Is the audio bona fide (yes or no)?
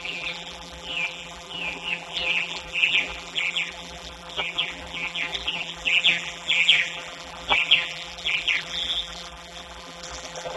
no